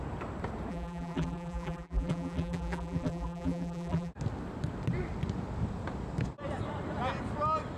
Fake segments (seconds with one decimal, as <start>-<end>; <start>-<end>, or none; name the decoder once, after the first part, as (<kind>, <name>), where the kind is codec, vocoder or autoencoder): 0.7-4.1 (vocoder, BigVGAN v2)